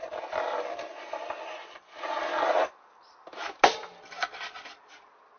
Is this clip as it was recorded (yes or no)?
yes